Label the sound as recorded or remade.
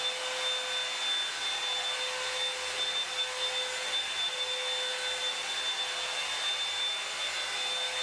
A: recorded